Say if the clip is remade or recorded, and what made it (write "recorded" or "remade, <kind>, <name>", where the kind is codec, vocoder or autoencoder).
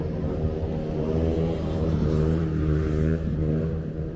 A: remade, vocoder, BigVGAN v2